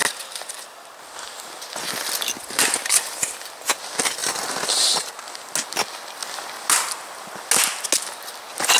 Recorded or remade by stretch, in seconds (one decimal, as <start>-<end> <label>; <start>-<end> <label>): 0.0-2.4 recorded; 2.4-3.6 remade; 3.6-4.2 recorded; 4.2-5.1 remade; 5.1-8.8 recorded